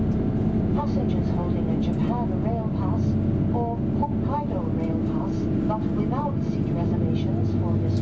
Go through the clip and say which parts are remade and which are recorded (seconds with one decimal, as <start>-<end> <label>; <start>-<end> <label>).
0.0-8.0 recorded